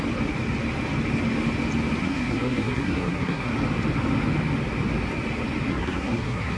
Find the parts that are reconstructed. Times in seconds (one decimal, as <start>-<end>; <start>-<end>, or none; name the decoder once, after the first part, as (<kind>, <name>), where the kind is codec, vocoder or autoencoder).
2.0-3.5 (codec, SNAC); 5.7-6.6